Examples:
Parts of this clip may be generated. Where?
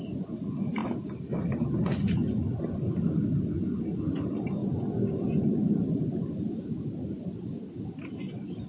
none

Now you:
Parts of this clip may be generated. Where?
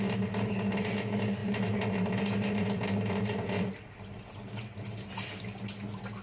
1.4-5.1 (vocoder, BigVGAN v2)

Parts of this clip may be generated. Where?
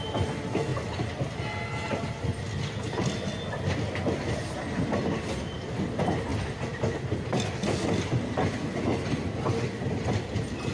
none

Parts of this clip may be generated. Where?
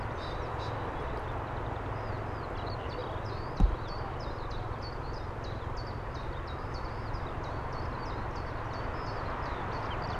3.0-4.1 (vocoder, BigVGAN v2)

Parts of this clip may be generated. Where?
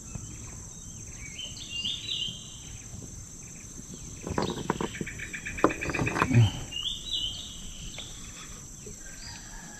2.9-4.0 (vocoder, BigVGAN v2)